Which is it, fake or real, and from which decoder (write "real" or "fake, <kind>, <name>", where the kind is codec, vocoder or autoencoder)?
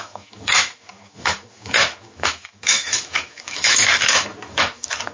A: fake, autoencoder, DAC-VAE